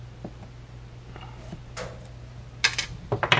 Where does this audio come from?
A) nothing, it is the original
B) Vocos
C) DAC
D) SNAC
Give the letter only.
A